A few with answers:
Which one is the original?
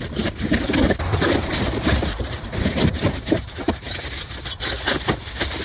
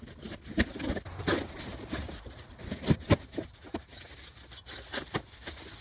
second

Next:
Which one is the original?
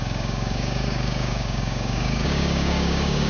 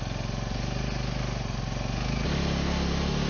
second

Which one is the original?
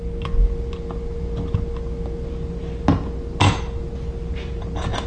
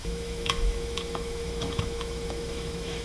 first